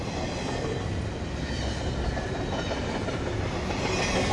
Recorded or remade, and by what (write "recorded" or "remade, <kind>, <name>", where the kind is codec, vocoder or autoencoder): recorded